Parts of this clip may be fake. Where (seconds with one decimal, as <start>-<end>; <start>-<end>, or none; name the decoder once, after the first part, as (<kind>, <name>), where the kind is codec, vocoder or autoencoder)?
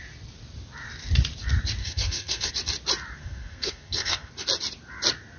1.8-2.5 (codec, SNAC); 3.2-4.3